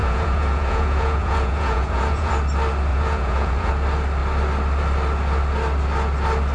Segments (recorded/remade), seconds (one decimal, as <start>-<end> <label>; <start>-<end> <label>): 0.0-2.3 remade; 2.3-2.9 recorded; 2.9-3.7 remade; 3.7-6.5 recorded